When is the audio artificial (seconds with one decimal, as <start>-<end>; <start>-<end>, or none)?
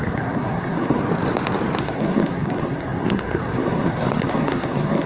0.0-1.0; 1.8-5.1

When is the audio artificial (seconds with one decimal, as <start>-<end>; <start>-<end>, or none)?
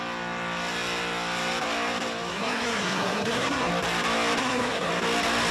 2.3-3.7; 4.4-4.9